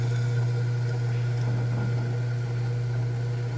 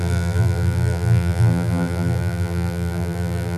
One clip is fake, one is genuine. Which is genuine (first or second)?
first